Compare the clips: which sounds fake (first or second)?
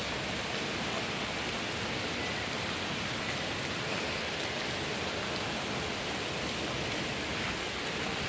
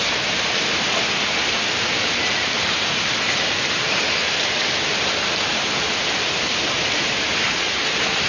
second